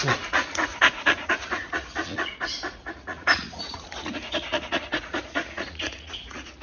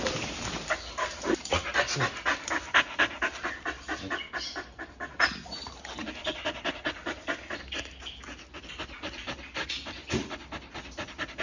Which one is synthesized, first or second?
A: first